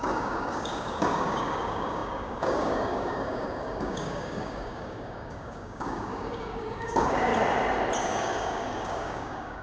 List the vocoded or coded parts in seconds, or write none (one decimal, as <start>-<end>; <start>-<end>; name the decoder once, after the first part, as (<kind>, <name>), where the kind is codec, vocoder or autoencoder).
0.0-7.3 (codec, DAC); 8.0-9.6